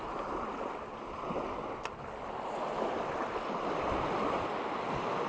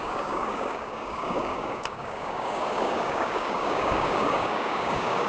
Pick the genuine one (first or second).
first